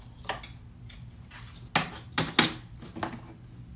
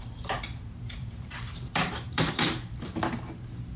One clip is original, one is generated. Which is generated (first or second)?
second